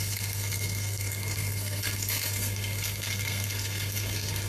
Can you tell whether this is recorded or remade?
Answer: remade